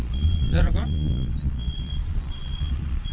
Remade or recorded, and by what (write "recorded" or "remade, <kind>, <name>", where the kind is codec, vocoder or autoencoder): remade, vocoder, Vocos